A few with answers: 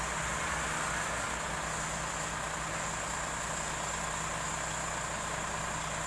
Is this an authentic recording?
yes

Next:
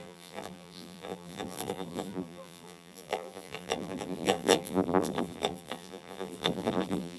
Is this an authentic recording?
no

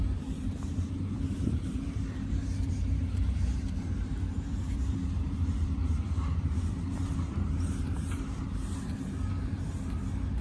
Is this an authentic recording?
no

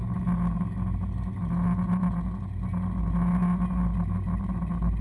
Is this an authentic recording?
yes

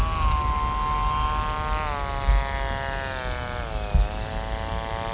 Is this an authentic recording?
yes